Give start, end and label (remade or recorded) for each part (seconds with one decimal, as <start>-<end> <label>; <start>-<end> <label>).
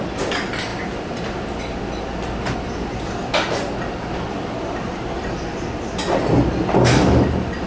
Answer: 0.0-7.7 recorded